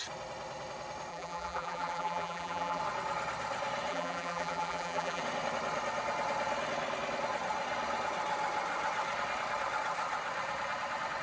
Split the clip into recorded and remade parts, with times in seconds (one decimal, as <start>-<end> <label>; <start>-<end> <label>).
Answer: 0.0-1.1 recorded; 1.1-2.8 remade; 2.8-3.9 recorded; 3.9-5.2 remade; 5.2-11.2 recorded